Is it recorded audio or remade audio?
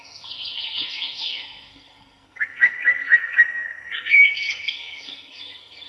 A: remade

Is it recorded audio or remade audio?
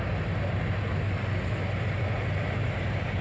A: recorded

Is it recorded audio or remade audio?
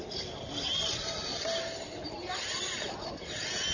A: recorded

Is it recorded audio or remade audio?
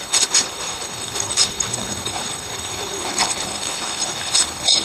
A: remade